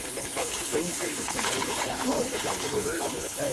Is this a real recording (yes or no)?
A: no